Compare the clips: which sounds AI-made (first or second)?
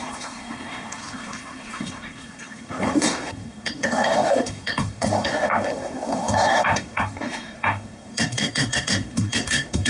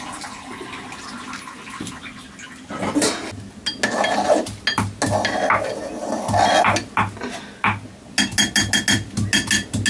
first